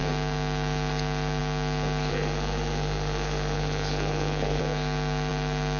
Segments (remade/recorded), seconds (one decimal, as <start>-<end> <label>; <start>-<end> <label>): 0.0-2.1 recorded; 2.1-4.6 remade; 4.6-5.8 recorded